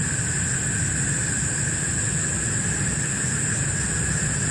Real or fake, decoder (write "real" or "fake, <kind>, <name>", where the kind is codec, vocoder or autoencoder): real